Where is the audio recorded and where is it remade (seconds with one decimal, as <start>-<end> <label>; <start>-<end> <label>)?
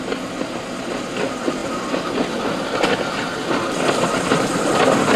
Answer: 0.0-5.2 recorded